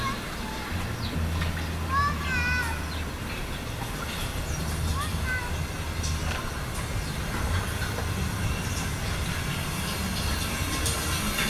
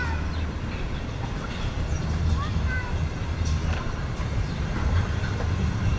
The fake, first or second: second